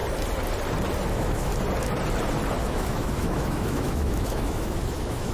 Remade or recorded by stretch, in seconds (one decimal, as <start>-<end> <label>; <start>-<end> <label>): 0.0-1.1 recorded; 1.1-1.5 remade; 1.5-2.6 recorded; 2.6-5.3 remade